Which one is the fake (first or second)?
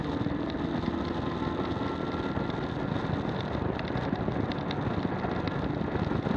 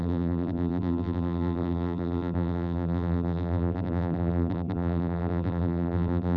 second